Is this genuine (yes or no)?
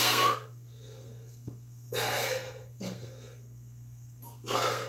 no